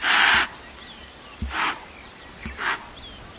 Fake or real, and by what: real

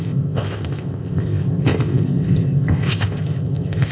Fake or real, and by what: fake, codec, ZipCodec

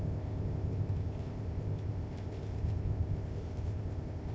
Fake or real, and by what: fake, codec, ZipCodec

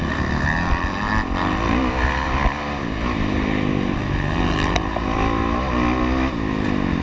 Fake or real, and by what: real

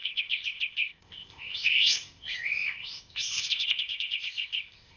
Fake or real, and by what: fake, codec, ZipCodec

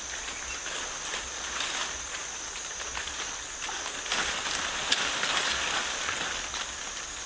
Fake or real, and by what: real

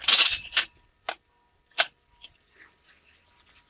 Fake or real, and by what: real